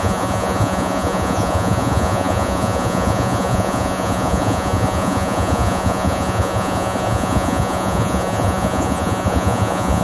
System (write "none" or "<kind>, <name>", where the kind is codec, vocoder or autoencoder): vocoder, Vocos